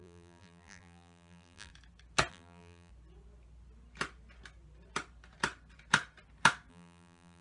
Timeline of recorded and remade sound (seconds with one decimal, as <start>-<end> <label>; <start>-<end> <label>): 0.0-1.7 remade; 1.7-2.3 recorded; 2.3-2.9 remade; 2.9-6.7 recorded; 6.7-7.4 remade